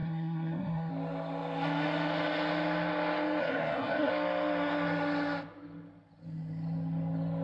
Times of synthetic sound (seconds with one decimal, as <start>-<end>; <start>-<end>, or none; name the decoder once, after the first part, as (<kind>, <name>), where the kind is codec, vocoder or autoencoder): 0.0-0.9 (codec, SNAC); 3.4-4.1